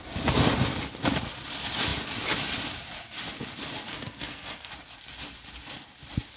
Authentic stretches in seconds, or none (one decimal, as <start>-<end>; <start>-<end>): 0.0-3.9; 4.7-6.4